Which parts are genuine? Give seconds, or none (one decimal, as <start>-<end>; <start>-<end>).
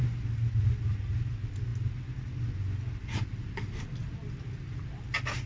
0.0-5.5